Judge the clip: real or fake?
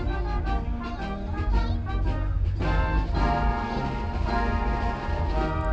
real